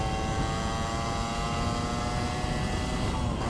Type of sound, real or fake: real